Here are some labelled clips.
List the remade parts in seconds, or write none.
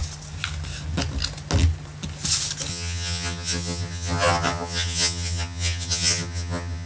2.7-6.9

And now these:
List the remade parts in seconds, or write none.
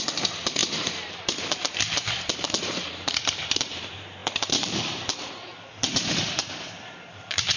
0.0-7.6